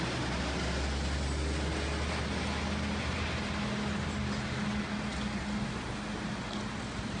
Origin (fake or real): real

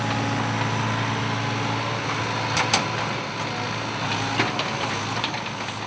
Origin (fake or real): real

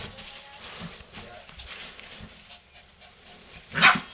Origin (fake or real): real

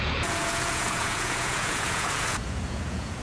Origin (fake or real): fake